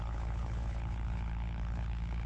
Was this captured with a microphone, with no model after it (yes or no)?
no